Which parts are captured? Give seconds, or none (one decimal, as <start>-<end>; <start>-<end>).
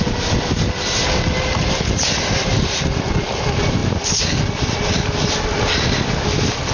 0.0-6.7